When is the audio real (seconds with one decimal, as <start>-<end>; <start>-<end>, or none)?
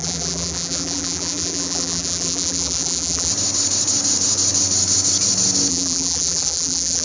3.3-5.7